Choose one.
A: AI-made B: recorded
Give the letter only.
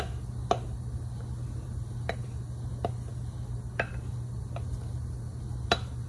B